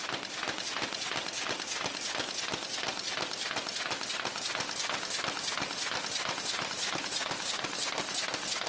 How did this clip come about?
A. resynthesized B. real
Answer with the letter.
B